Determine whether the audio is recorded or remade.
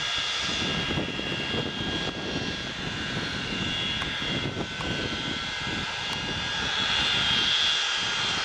recorded